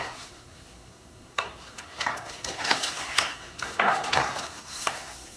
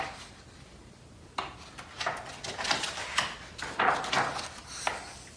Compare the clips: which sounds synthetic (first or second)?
first